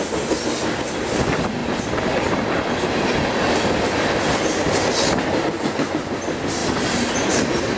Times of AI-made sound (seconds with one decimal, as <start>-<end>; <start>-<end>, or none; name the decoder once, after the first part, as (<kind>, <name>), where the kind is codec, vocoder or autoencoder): none